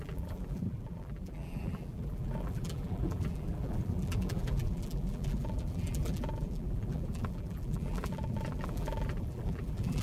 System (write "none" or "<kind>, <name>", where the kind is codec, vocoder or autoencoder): vocoder, BigVGAN v2